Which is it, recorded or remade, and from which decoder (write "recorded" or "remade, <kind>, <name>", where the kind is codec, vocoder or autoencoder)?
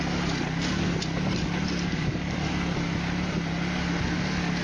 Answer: recorded